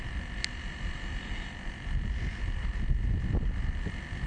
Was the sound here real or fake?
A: real